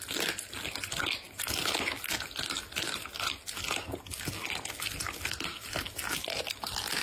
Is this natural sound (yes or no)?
yes